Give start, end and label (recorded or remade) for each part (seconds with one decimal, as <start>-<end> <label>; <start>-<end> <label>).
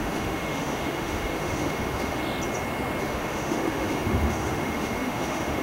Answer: 0.0-2.2 remade; 2.2-3.0 recorded; 3.0-5.6 remade